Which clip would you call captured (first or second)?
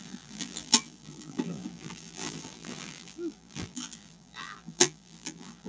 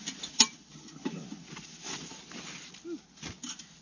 second